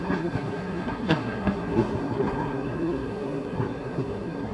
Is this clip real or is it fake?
fake